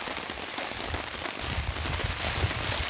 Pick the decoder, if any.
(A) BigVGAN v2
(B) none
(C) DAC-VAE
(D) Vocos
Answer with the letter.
B